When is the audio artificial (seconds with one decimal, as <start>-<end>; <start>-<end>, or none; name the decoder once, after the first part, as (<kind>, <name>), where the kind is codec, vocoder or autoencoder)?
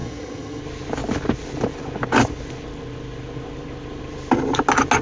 0.0-0.6 (vocoder, HiFi-GAN)